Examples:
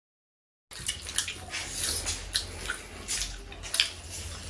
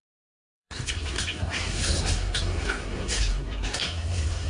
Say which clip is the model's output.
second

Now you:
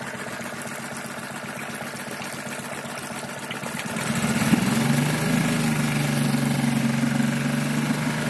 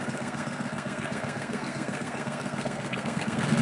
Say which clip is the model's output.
second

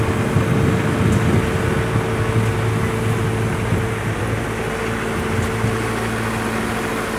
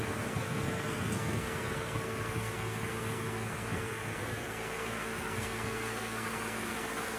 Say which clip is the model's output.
second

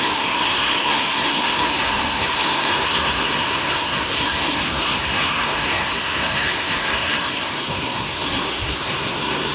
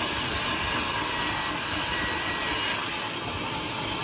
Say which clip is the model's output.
first